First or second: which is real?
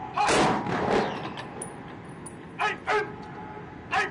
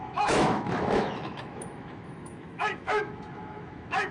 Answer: first